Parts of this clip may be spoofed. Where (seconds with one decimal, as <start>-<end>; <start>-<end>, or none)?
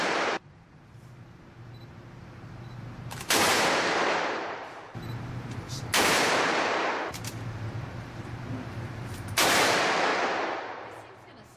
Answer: 0.0-10.1; 10.6-11.6